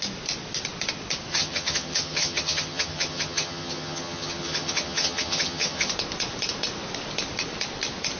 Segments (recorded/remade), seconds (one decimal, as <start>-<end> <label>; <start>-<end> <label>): 0.0-1.3 recorded; 1.3-5.9 remade; 5.9-8.2 recorded